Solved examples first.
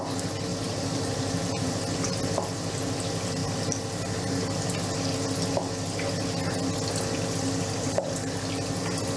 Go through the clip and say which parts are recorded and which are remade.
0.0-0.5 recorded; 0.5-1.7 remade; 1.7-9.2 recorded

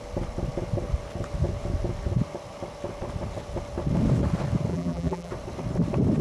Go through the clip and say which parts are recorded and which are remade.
0.0-4.7 recorded; 4.7-5.3 remade; 5.3-6.2 recorded

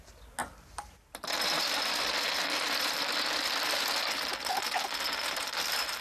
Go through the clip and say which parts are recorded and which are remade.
0.0-6.0 recorded

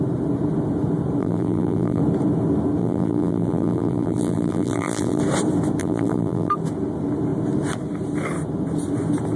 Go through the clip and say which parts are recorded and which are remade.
0.0-1.2 recorded; 1.2-2.0 remade; 2.0-2.8 recorded; 2.8-5.2 remade; 5.2-5.8 recorded; 5.8-6.5 remade; 6.5-9.4 recorded

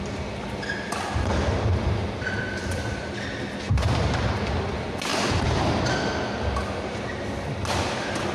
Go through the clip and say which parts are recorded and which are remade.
0.0-2.0 recorded; 2.0-3.6 remade; 3.6-8.3 recorded

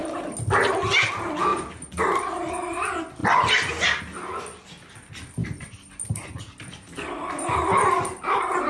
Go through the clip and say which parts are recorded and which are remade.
0.0-1.5 recorded; 1.5-2.5 remade; 2.5-8.7 recorded

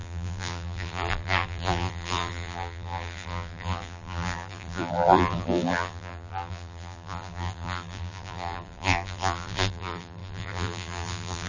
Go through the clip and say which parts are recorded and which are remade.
0.0-11.5 remade